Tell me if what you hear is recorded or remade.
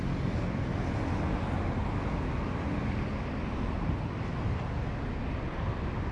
recorded